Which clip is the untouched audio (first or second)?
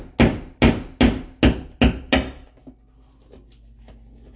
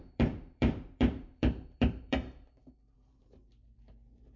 first